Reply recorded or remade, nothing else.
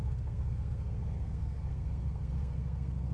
remade